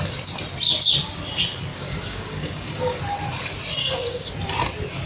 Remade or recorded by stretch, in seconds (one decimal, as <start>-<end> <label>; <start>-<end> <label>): 0.0-1.7 recorded; 1.7-3.0 remade; 3.0-3.8 recorded; 3.8-4.3 remade; 4.3-5.1 recorded